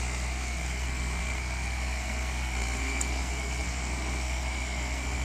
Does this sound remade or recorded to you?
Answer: remade